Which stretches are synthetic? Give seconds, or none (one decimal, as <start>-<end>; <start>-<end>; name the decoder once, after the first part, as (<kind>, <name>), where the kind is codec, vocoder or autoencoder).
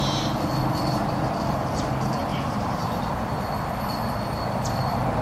2.3-3.0 (vocoder, BigVGAN v2)